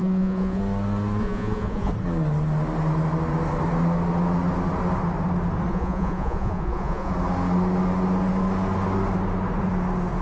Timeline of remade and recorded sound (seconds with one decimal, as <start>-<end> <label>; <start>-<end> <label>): 0.0-0.6 remade; 0.6-1.2 recorded; 1.2-1.9 remade; 1.9-5.7 recorded; 5.7-7.1 remade; 7.1-10.2 recorded